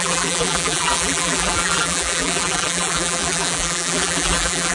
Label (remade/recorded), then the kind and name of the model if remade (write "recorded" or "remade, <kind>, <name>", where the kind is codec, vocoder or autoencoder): remade, vocoder, BigVGAN v2